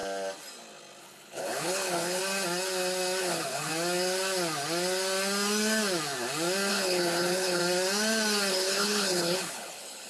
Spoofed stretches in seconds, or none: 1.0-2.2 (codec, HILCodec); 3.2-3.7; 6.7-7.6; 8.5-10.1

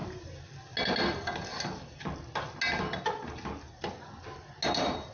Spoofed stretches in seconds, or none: none

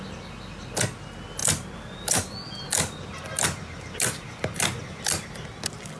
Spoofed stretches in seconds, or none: none

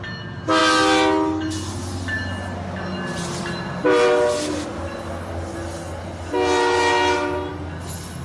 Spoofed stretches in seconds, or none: none

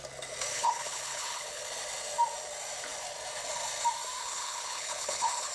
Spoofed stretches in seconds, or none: 0.5-1.6 (codec, HILCodec); 4.2-5.5

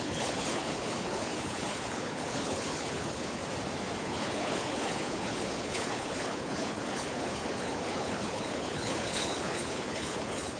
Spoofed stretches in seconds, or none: 0.0-3.4 (codec, HILCodec); 4.0-10.6

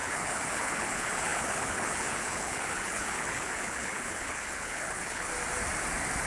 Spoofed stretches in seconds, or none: 0.0-5.3 (codec, HILCodec)

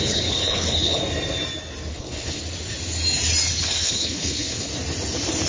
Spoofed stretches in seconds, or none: 0.0-1.0 (codec, HILCodec); 1.9-2.4; 3.6-4.7